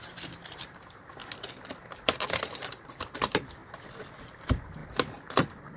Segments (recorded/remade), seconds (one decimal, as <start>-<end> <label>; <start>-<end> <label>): 0.0-1.2 remade; 1.2-1.9 recorded; 1.9-3.6 remade; 3.6-4.2 recorded; 4.2-4.8 remade; 4.8-5.8 recorded